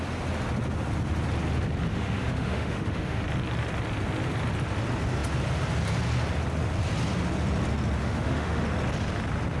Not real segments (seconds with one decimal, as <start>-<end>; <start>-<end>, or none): 1.9-3.2; 8.0-8.6